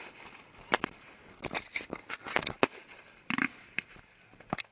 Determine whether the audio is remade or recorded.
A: recorded